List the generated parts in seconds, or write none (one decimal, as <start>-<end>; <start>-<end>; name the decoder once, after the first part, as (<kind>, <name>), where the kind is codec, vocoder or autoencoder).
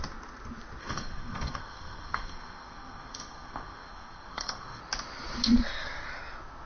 0.8-4.8 (codec, SNAC)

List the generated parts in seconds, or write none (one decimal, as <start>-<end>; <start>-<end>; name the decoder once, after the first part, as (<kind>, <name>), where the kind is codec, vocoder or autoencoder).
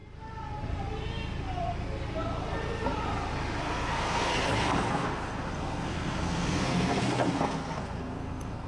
3.6-4.3 (codec, SNAC); 4.9-8.7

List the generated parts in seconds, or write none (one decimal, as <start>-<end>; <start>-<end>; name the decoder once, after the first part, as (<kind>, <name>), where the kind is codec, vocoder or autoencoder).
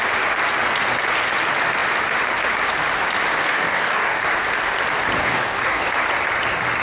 3.4-4.2 (codec, DAC); 5.2-5.8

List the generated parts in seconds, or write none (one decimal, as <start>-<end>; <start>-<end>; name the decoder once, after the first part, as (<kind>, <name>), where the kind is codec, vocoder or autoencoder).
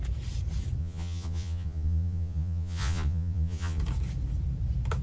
0.8-3.8 (vocoder, Vocos)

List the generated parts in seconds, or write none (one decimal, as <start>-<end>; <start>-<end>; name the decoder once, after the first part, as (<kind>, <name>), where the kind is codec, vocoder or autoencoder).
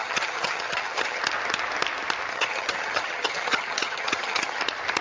0.0-1.2 (vocoder, HiFi-GAN); 2.3-4.6